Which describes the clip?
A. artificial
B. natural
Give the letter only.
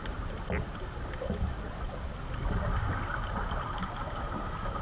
A